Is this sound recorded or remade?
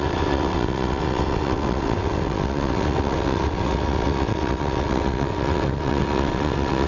remade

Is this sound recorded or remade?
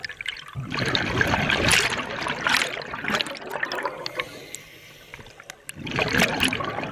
recorded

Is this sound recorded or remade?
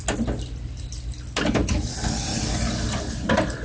recorded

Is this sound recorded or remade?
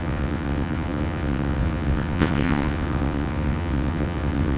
remade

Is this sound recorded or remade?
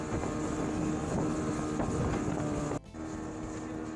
recorded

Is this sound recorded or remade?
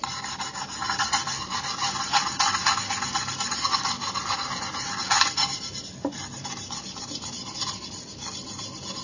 recorded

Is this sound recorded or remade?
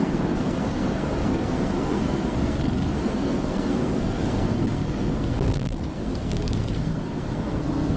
remade